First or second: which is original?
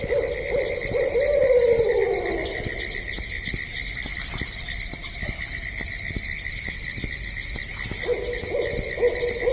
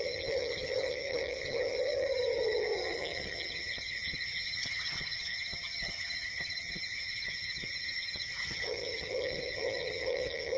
first